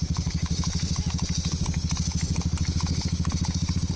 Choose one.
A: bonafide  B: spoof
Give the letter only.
A